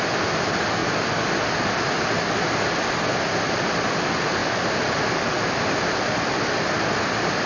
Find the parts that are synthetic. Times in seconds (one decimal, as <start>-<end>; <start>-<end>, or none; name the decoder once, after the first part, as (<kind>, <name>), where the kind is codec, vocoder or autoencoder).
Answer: none